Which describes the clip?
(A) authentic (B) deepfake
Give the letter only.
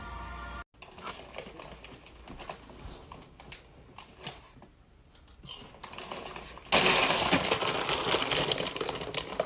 A